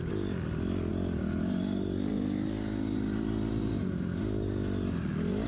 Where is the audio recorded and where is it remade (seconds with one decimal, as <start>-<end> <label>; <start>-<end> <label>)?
0.0-5.5 recorded